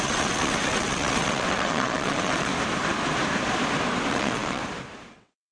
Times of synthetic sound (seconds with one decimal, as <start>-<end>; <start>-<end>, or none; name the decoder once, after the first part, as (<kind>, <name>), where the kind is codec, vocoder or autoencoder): 0.0-2.5 (vocoder, WaveNeXt); 4.1-4.6; 5.1-5.5